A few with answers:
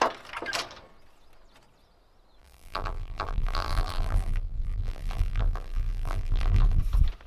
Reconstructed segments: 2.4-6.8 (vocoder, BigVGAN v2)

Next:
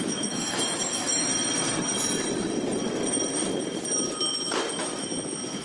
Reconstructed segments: 0.0-1.3 (autoencoder, DAC-VAE); 4.7-5.6

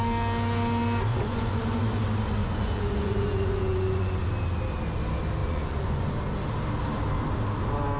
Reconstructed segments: 1.1-1.9 (vocoder, Vocos); 2.4-4.2; 5.4-6.1

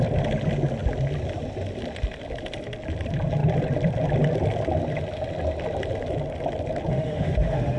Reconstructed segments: 6.9-7.8 (autoencoder, DAC-VAE)

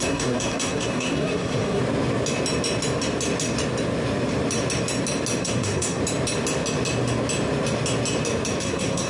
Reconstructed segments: 0.0-1.8 (codec, SNAC); 5.4-6.0; 8.6-9.1

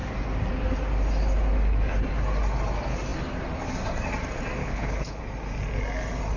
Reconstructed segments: 4.6-5.2 (codec, HILCodec)

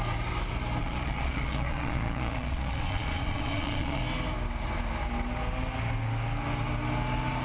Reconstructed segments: 0.8-4.0 (vocoder, Vocos)

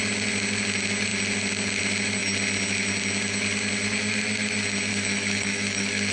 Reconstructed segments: 4.9-6.1 (autoencoder, DAC-VAE)